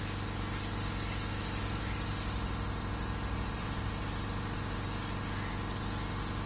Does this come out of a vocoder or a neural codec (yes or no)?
no